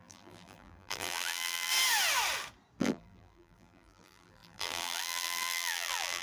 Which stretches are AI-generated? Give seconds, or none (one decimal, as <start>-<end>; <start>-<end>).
0.0-1.7; 2.8-6.2